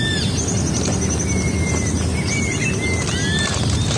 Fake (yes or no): no